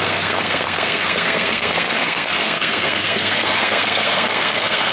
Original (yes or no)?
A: no